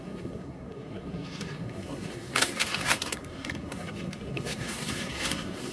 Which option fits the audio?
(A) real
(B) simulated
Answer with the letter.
B